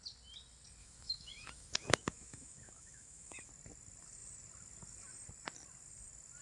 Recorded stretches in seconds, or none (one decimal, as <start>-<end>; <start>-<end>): 0.0-0.8; 3.5-6.4